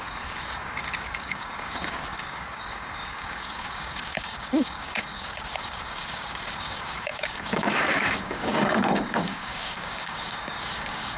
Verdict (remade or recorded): remade